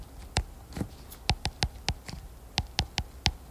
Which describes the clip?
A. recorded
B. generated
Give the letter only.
A